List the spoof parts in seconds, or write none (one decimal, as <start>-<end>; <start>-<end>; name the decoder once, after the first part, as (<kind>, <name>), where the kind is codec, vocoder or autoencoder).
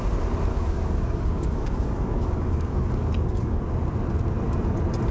0.5-3.6 (codec, DAC)